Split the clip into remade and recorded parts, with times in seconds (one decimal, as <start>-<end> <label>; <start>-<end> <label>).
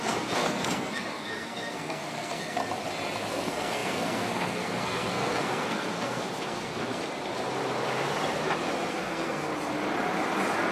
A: 0.0-2.6 remade; 2.6-3.3 recorded; 3.3-7.0 remade; 7.0-8.9 recorded; 8.9-9.5 remade; 9.5-10.7 recorded